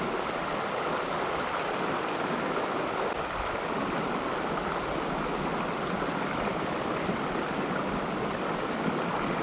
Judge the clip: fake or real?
real